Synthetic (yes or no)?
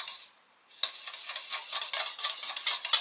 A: no